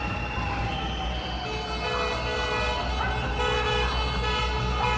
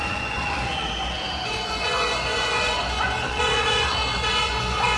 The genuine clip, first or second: first